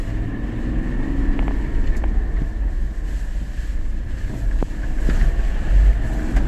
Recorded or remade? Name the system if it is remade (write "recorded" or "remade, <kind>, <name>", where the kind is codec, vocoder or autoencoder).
recorded